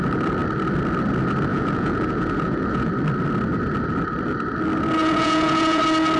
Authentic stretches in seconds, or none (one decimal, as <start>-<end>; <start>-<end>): 0.0-1.5; 2.9-5.0; 5.8-6.2